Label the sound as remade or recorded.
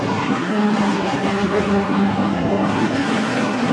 remade